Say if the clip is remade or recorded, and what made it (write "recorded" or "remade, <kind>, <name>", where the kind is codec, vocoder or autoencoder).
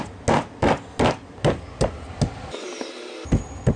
recorded